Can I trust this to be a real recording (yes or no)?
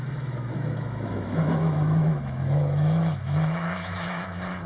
no